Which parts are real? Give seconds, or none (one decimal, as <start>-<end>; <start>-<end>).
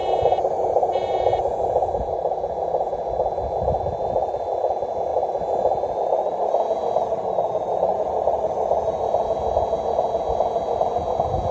3.1-11.5